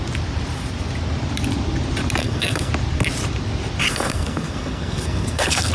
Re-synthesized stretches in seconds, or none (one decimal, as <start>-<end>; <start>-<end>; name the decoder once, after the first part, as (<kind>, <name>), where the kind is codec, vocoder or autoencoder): 2.2-2.7 (codec, SNAC); 3.9-5.7